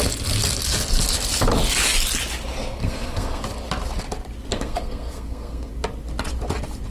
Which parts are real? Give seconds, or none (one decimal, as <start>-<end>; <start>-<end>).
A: 0.0-2.8; 3.4-4.5; 5.7-6.9